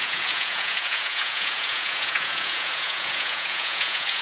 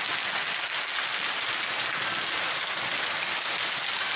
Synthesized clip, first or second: first